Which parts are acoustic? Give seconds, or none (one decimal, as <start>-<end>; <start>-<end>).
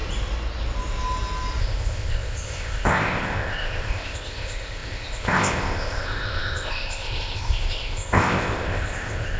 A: 0.0-1.6